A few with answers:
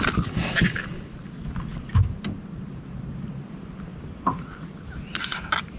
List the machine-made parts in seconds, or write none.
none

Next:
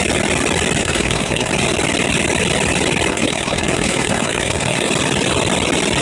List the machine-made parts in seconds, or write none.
0.8-1.5 (codec, SNAC); 3.1-4.9

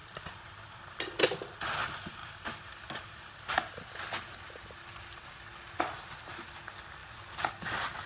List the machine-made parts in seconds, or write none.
none